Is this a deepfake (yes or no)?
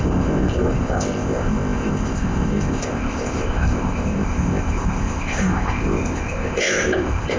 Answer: yes